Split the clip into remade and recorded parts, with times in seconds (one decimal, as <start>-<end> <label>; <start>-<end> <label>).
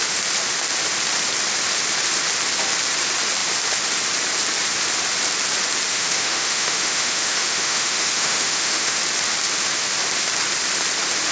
0.0-5.9 recorded; 5.9-9.0 remade; 9.0-11.3 recorded